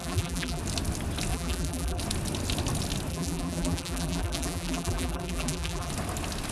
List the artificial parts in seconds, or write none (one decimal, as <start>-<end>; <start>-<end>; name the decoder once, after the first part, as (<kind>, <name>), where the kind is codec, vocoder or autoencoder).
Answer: 0.0-0.6 (vocoder, BigVGAN v2); 1.3-2.0; 3.1-5.9